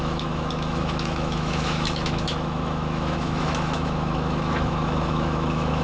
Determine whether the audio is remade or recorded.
remade